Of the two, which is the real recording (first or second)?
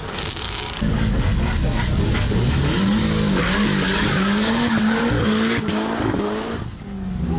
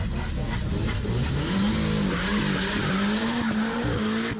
second